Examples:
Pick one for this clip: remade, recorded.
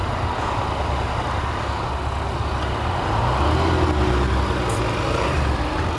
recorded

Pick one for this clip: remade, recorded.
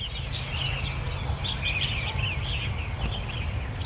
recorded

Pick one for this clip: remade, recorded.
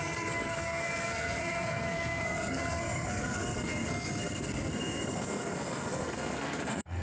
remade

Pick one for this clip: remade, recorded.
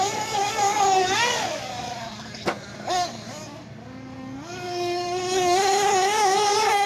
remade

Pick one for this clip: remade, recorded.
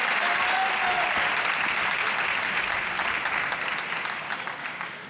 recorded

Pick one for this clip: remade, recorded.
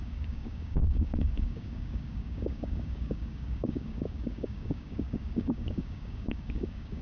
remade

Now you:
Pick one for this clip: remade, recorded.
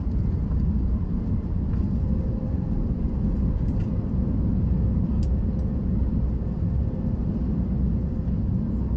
recorded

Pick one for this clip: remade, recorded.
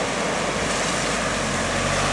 recorded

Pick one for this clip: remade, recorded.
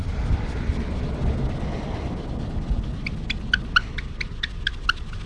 recorded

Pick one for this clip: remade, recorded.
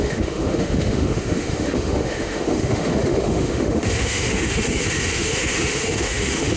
remade